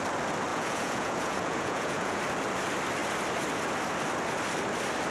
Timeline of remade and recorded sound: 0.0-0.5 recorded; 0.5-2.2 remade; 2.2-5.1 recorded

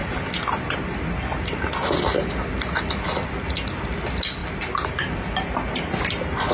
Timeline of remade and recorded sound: 0.0-6.5 recorded

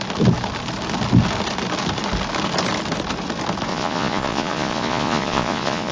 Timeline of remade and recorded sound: 0.0-3.7 recorded; 3.7-5.9 remade